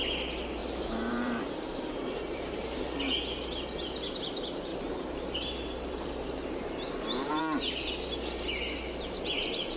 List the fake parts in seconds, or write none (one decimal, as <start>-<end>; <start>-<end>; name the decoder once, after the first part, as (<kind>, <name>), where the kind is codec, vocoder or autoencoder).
0.6-2.8 (vocoder, BigVGAN v2); 4.7-7.4